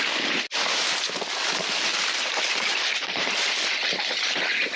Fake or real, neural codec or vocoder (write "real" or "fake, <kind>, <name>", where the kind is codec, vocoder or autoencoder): real